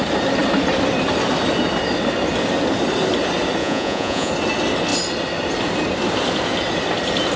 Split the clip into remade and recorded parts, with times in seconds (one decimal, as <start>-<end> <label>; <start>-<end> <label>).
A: 0.0-3.6 recorded; 3.6-4.3 remade; 4.3-7.4 recorded